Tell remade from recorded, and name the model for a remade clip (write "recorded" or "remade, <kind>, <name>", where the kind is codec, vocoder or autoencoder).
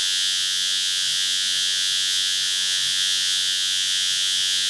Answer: remade, vocoder, Vocos